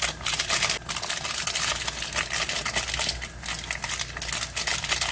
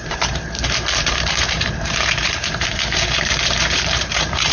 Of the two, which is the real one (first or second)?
first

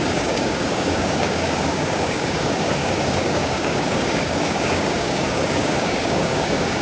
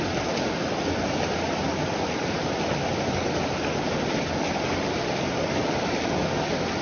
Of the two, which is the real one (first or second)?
second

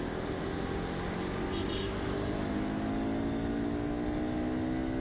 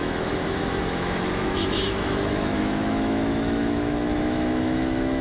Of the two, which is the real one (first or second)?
first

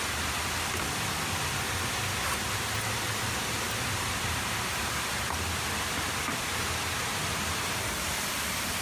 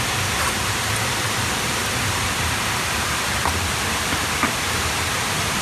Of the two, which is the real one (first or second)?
first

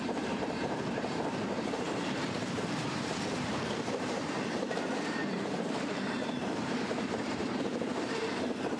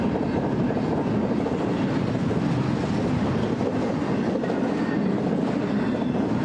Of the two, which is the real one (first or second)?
second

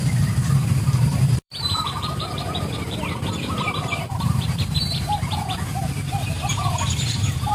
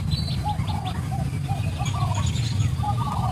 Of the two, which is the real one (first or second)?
second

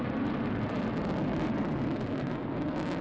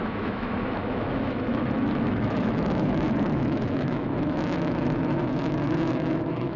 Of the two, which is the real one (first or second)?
first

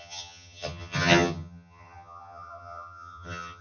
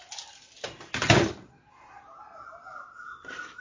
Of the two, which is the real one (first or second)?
second